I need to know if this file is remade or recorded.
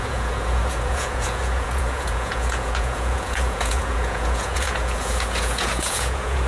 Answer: remade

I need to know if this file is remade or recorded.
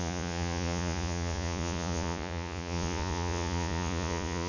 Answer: remade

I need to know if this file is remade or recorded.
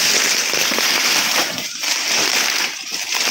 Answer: remade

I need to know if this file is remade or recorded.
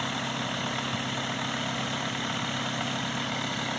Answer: recorded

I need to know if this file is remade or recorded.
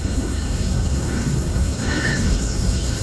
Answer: remade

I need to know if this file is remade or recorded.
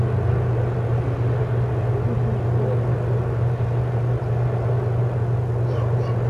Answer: recorded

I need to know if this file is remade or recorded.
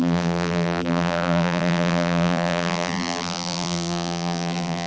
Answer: remade